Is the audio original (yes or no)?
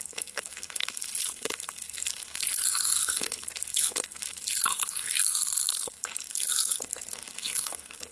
no